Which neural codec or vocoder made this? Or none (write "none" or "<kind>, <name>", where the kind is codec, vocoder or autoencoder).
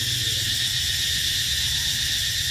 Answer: none